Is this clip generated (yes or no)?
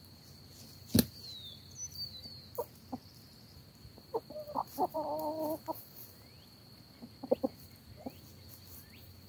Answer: no